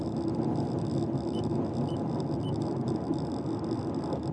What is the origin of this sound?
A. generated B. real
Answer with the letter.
B